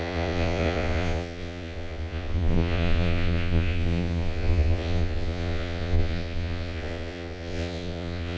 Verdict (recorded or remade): remade